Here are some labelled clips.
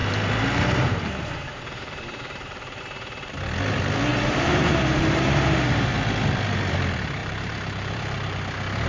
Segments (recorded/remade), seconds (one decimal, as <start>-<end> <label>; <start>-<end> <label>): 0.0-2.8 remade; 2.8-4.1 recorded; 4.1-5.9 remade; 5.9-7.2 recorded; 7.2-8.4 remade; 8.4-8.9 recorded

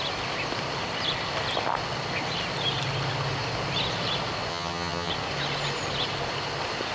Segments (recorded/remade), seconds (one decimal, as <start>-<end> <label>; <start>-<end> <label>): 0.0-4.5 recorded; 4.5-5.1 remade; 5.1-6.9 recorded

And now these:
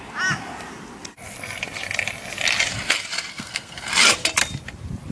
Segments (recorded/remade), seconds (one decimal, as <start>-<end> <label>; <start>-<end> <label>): 0.0-3.3 recorded; 3.3-3.9 remade; 3.9-5.1 recorded